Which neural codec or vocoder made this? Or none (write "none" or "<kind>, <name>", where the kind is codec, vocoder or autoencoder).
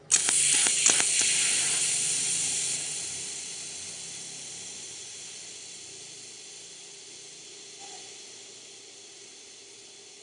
none